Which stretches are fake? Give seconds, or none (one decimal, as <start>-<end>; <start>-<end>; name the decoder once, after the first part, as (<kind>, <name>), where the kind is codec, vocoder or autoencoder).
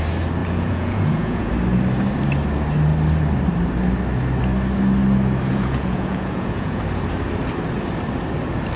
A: 0.4-1.5 (vocoder, Vocos); 5.5-6.8